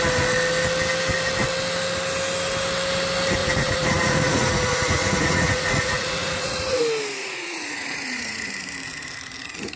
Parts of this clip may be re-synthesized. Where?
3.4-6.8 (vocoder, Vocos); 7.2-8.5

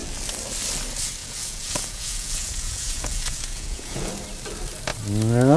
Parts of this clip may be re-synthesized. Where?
1.2-4.1 (vocoder, Vocos)

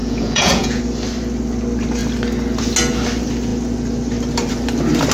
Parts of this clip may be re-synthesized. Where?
0.0-0.8 (vocoder, Vocos)

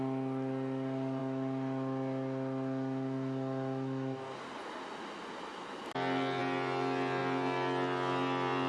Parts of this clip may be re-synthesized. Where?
none

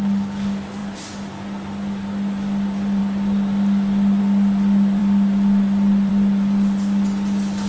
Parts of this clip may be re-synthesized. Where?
none

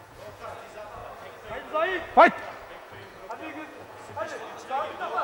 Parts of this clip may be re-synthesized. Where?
0.0-1.0 (vocoder, Vocos); 2.7-5.2